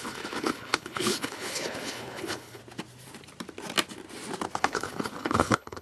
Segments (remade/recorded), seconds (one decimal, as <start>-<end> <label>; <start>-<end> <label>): 0.0-2.6 remade; 2.6-4.6 recorded; 4.6-5.8 remade